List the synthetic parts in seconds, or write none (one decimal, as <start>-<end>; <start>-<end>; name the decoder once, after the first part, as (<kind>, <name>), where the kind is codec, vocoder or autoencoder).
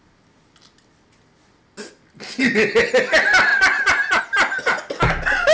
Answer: 3.5-4.2 (vocoder, BigVGAN v2)